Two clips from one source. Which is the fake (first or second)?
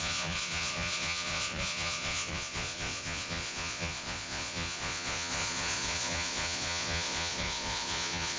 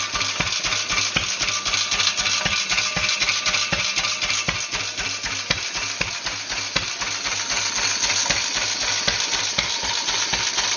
first